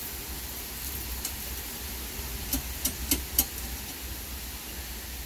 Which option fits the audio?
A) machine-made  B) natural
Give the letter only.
B